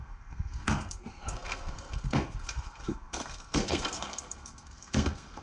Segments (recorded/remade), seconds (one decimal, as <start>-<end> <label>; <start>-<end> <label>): 0.0-5.4 remade

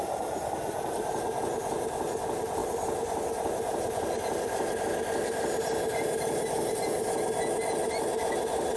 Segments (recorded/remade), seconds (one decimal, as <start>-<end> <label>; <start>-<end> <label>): 0.0-2.6 recorded; 2.6-4.8 remade; 4.8-8.8 recorded

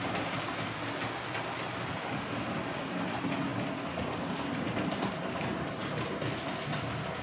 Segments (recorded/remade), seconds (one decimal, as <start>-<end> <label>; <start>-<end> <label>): 0.0-7.2 recorded

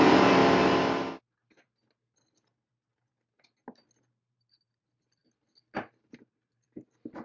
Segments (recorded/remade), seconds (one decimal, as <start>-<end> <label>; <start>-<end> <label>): 0.0-0.4 remade; 0.4-4.0 recorded; 4.0-5.2 remade; 5.2-5.9 recorded; 5.9-7.2 remade

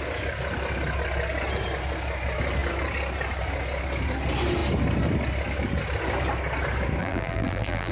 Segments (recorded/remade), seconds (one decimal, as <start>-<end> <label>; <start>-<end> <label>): 0.0-7.0 recorded; 7.0-7.9 remade